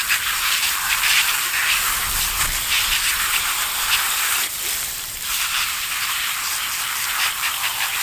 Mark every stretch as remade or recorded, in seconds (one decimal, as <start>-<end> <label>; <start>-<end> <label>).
0.0-1.6 remade; 1.6-4.5 recorded; 4.5-8.0 remade

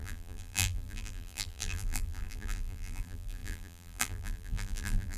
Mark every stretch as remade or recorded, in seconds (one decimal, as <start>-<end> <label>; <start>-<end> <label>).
0.0-5.2 remade

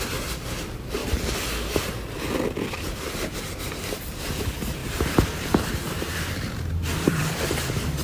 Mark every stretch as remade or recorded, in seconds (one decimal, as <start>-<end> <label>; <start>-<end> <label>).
0.0-1.0 remade; 1.0-3.4 recorded; 3.4-8.0 remade